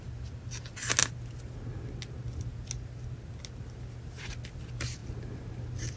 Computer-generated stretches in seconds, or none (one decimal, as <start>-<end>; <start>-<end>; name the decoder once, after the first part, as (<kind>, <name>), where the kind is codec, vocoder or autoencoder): none